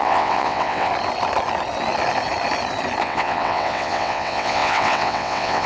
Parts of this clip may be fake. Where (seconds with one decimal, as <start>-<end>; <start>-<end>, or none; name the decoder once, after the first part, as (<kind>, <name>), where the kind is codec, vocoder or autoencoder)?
0.0-0.9 (vocoder, WaveNeXt); 3.0-5.7